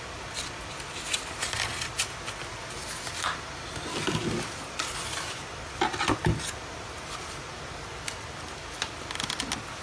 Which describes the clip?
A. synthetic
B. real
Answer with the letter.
B